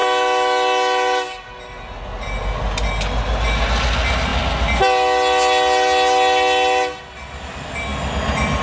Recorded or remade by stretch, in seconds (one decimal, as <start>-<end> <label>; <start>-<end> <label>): 0.0-8.6 recorded